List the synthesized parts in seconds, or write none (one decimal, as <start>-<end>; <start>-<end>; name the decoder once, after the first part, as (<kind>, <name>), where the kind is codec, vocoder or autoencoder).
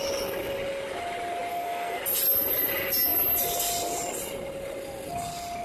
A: 1.5-2.0 (codec, SNAC)